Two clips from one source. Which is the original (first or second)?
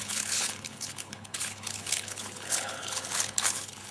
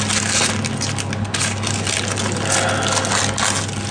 second